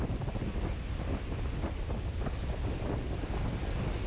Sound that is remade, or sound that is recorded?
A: recorded